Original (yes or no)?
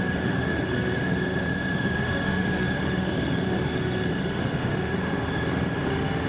no